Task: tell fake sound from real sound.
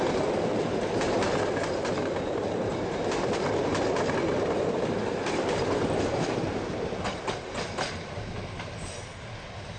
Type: real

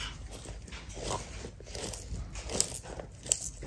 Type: real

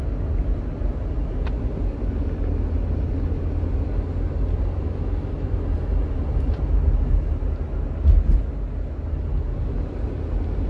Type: real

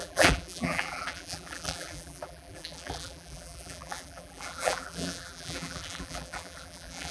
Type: fake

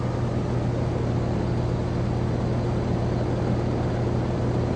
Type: real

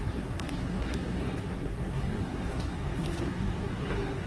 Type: fake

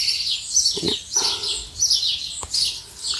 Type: real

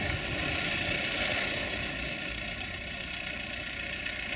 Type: real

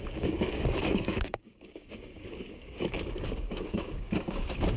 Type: fake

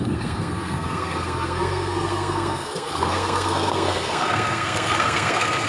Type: fake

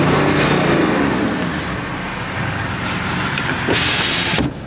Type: real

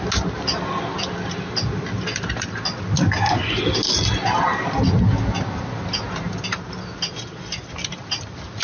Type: real